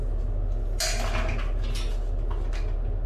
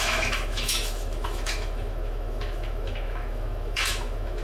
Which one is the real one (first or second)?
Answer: first